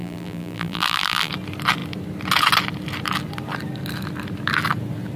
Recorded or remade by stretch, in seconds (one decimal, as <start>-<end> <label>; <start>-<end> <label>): 0.0-1.3 remade; 1.3-5.2 recorded